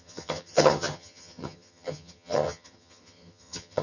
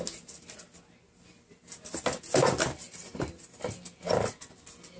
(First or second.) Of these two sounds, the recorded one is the second